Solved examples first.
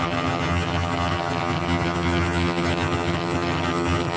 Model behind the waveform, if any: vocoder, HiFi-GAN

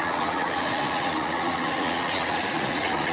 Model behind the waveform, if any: vocoder, Vocos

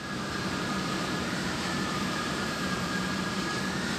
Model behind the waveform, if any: vocoder, BigVGAN v2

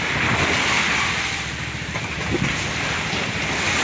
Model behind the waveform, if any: none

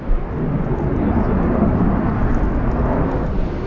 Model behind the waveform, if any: none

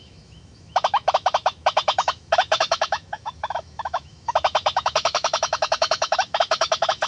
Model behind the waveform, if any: autoencoder, DAC-VAE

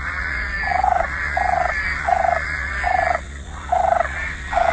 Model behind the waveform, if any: vocoder, Vocos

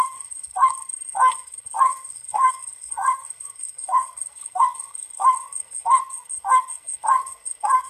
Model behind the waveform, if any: codec, SNAC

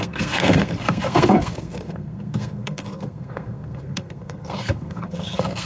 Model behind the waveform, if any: codec, SNAC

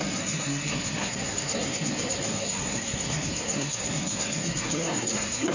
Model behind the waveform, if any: codec, SNAC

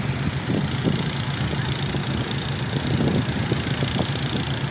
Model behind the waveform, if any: none